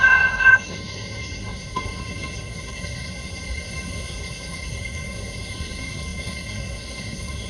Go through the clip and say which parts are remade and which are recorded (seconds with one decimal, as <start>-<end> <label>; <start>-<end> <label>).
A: 0.0-7.5 remade